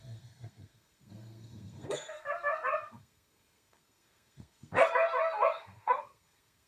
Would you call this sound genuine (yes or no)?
no